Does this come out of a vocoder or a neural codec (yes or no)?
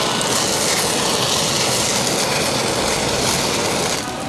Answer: no